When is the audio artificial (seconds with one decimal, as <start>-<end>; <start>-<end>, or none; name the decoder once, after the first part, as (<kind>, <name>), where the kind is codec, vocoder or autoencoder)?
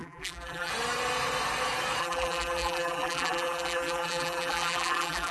0.0-0.7 (vocoder, BigVGAN v2); 2.0-5.3